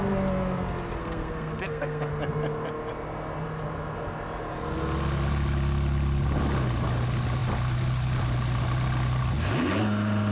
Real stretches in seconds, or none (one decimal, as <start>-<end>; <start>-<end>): 0.0-1.0; 2.1-10.3